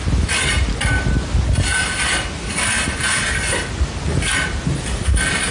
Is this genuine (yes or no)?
yes